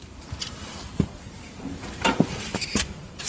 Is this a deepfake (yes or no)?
yes